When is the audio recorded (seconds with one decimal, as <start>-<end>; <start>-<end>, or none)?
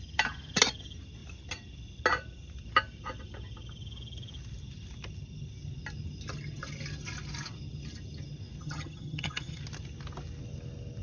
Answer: 0.0-8.6; 9.6-11.0